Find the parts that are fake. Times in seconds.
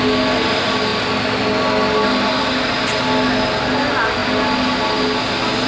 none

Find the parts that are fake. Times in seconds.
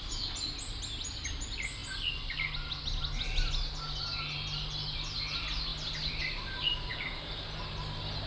none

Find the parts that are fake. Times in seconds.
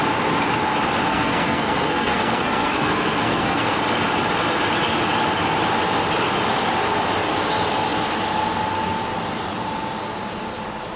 1.1-3.8 (codec, SNAC)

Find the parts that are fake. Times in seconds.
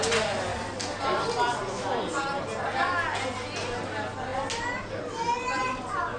none